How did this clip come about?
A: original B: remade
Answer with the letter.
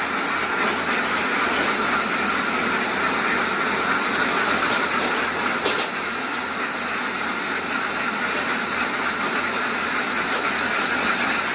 A